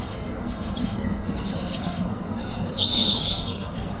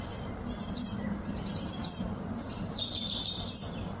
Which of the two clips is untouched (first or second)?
second